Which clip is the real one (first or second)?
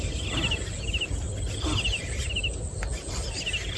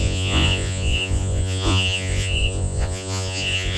first